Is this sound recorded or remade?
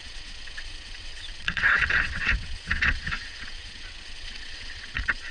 remade